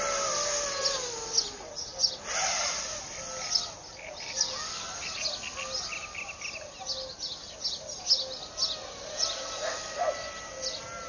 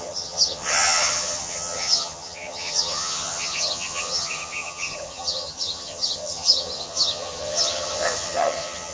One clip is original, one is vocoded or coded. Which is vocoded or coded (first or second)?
second